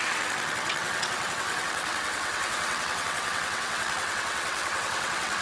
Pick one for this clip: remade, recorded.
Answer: remade